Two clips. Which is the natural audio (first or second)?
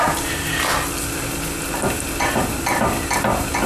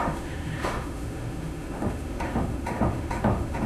first